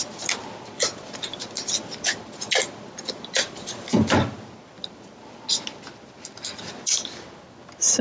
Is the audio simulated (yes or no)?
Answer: no